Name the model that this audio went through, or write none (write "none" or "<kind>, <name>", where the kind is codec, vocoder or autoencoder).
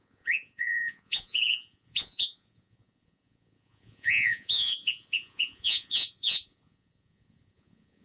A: vocoder, Vocos